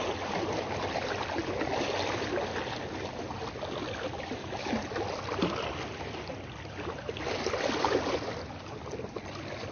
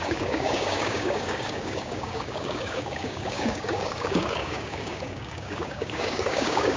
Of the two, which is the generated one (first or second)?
second